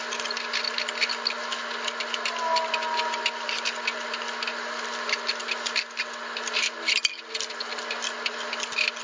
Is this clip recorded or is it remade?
recorded